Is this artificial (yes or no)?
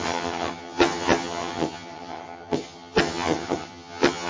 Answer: yes